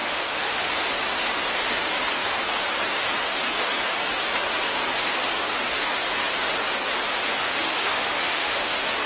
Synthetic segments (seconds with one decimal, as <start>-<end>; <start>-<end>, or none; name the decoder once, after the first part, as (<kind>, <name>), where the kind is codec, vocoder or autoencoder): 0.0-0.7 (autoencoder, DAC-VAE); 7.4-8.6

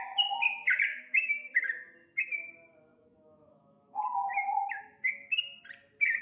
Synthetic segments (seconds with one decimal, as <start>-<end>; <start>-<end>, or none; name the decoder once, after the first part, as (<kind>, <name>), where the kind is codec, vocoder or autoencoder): 0.9-1.6 (autoencoder, DAC-VAE); 2.9-4.8

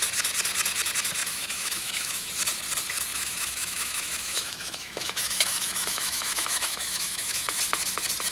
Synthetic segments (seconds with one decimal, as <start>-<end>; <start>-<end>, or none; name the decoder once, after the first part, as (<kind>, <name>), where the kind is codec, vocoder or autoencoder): 1.2-2.3 (autoencoder, DAC-VAE); 3.1-7.6

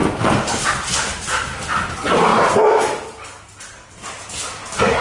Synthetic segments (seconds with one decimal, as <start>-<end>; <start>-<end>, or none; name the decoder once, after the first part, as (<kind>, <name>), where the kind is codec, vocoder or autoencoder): none

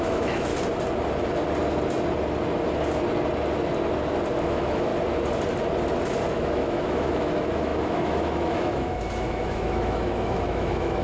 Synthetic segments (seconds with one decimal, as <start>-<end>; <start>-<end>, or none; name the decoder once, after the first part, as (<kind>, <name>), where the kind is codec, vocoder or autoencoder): 0.0-0.5 (autoencoder, DAC-VAE); 4.4-4.9; 6.3-11.0

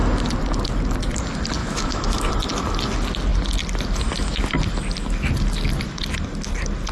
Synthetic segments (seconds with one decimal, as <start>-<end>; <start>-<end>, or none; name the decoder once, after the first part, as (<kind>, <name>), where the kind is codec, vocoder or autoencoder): 1.6-2.3 (autoencoder, DAC-VAE)